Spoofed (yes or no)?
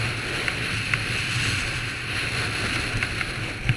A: no